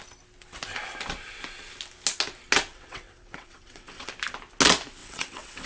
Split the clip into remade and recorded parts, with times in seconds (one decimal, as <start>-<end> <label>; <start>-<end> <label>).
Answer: 0.0-2.7 recorded; 2.7-4.1 remade; 4.1-5.0 recorded; 5.0-5.7 remade